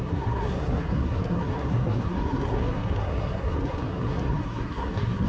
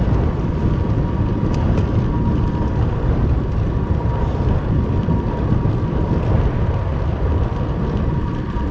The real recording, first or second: second